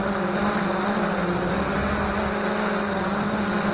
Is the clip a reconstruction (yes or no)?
no